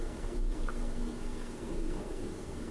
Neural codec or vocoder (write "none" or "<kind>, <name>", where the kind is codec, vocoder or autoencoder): codec, SNAC